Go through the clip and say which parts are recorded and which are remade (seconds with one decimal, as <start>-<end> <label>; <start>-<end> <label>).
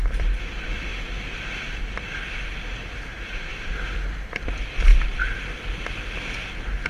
0.0-0.9 remade; 0.9-3.0 recorded; 3.0-4.9 remade; 4.9-5.6 recorded; 5.6-6.9 remade